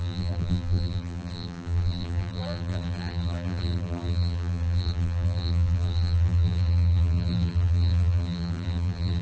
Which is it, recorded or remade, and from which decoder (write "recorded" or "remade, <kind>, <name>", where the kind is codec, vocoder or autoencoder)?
remade, vocoder, BigVGAN v2